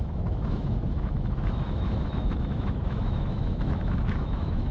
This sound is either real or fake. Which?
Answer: fake